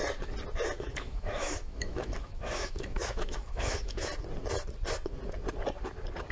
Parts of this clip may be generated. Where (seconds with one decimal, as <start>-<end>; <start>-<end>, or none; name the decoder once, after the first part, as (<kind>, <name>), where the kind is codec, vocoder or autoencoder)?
0.8-4.1 (autoencoder, DAC-VAE)